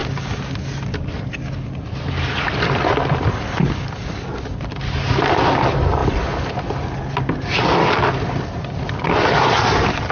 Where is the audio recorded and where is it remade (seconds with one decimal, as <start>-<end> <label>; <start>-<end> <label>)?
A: 0.0-10.1 recorded